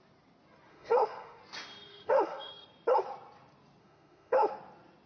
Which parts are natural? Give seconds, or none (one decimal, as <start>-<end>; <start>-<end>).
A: 0.0-0.7; 1.4-1.9; 2.5-3.8; 4.5-5.1